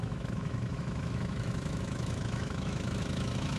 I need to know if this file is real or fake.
fake